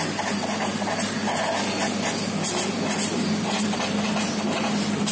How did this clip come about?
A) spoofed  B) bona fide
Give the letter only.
B